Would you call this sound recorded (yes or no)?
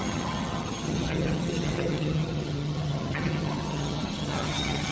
no